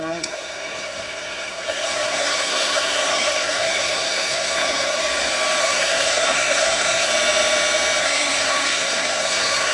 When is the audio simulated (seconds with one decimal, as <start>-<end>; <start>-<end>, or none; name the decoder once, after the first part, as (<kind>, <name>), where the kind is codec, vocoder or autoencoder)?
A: 0.0-5.0 (codec, SNAC); 5.6-7.1; 8.0-9.7